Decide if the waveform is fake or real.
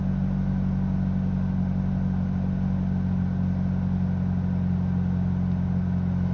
real